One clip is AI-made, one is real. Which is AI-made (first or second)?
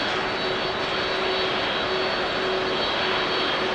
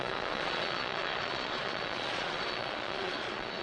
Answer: second